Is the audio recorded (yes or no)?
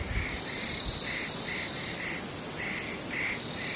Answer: yes